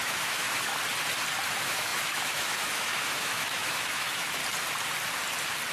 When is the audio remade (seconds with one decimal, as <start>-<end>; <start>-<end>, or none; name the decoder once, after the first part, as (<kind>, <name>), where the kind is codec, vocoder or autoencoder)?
0.0-0.7 (autoencoder, DAC-VAE); 1.5-4.4